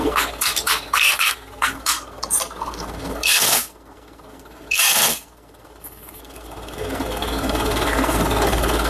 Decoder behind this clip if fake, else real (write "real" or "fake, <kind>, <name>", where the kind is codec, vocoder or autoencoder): fake, codec, SNAC